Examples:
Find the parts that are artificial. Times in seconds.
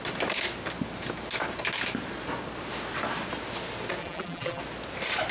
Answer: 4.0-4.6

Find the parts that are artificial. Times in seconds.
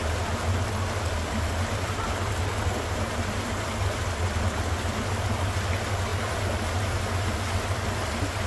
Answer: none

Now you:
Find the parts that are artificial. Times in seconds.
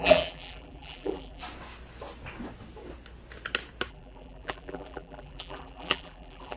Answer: 0.0-1.4; 3.9-6.6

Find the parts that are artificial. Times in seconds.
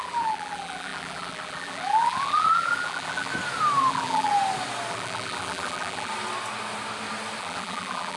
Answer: 0.0-3.3; 3.9-4.3; 4.9-6.1; 7.4-8.2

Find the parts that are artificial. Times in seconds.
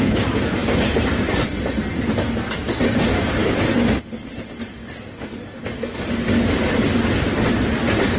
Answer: 0.6-1.3